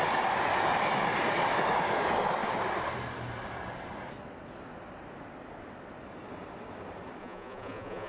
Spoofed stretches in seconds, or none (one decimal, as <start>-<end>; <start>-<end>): 7.2-8.1